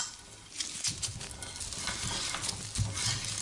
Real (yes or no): yes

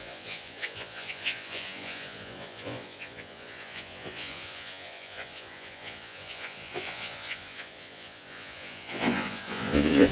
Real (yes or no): no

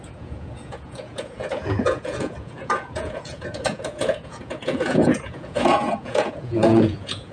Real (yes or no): no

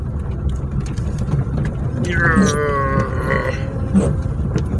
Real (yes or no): yes